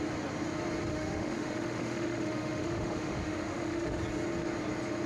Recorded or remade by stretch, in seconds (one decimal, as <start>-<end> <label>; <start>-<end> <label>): 0.0-0.9 recorded; 0.9-4.0 remade; 4.0-5.1 recorded